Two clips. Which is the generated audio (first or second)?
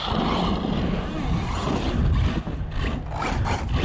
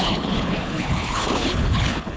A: second